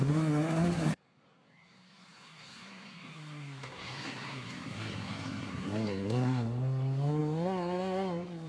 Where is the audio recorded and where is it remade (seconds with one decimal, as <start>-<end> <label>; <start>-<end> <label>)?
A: 0.0-8.5 remade